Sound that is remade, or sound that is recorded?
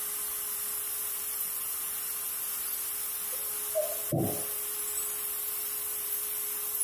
recorded